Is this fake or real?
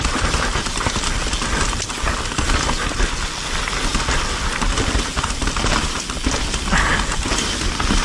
real